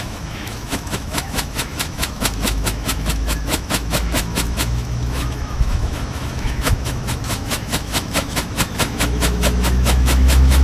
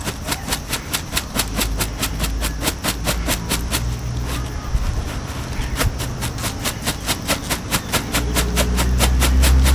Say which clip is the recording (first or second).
second